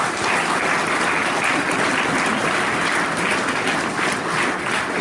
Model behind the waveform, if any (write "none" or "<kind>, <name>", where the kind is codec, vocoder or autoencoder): none